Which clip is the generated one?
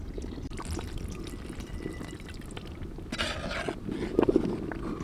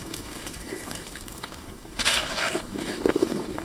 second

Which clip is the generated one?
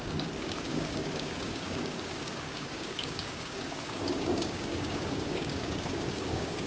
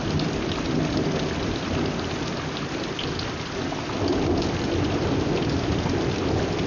first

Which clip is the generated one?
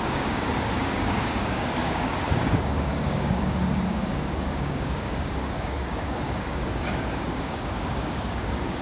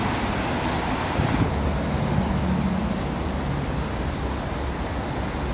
first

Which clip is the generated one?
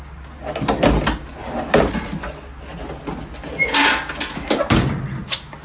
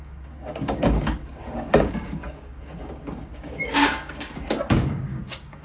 second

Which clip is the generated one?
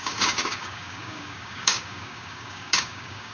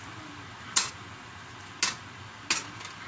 first